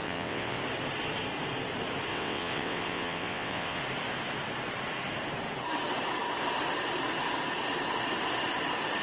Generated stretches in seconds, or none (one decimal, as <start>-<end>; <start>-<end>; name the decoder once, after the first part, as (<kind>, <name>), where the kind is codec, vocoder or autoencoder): 0.0-0.6 (vocoder, WaveNeXt); 2.1-3.8